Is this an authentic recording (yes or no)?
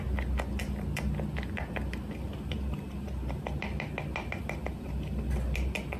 yes